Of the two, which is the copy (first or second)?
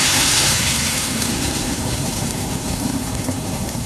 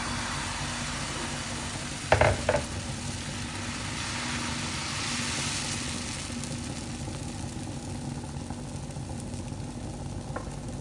first